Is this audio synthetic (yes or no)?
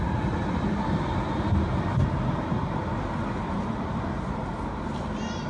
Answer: no